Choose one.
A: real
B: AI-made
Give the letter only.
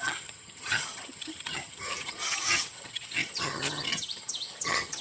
B